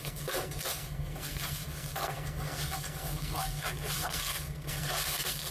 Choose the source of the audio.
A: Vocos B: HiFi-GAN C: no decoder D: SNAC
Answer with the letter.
D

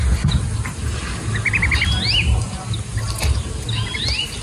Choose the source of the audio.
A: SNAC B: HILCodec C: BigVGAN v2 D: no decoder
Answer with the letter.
D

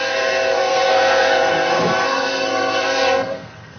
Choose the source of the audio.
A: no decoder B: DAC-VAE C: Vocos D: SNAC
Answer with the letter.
D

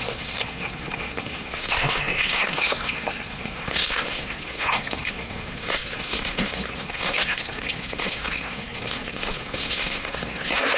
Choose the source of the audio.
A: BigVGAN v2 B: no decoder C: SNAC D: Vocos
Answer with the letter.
C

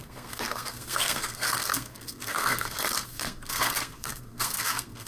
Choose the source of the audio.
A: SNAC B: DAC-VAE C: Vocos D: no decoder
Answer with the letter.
A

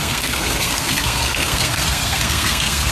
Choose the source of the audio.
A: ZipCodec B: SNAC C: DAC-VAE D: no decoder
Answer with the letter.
B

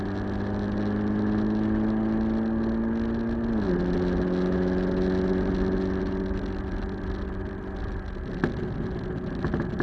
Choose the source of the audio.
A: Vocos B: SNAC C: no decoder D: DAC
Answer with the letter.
C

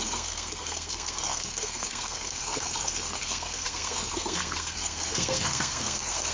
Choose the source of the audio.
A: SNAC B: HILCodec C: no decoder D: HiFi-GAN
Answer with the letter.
A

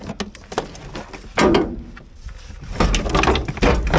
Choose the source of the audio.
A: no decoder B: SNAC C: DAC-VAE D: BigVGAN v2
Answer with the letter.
A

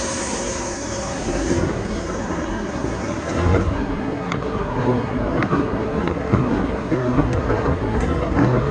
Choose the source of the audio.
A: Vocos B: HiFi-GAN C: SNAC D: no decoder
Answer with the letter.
C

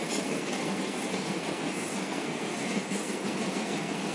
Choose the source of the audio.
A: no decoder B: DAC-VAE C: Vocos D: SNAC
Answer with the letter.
D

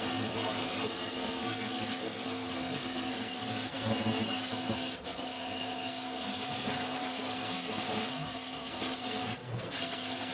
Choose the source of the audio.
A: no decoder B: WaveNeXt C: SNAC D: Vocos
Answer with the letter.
C